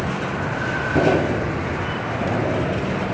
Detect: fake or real real